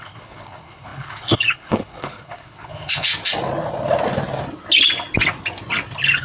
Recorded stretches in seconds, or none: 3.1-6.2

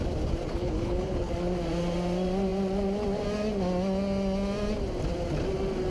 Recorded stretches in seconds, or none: 0.0-0.5; 1.3-5.9

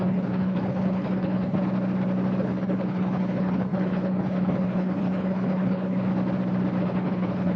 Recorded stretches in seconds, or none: 1.6-2.4; 6.1-6.8

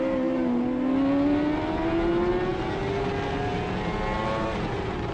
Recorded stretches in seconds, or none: 0.0-5.1

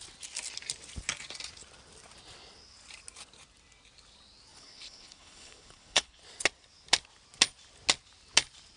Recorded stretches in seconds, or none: 0.0-4.5; 6.2-8.8

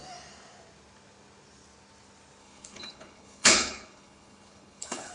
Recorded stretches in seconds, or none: 0.0-2.4